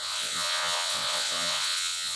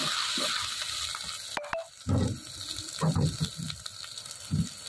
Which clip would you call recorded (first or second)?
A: second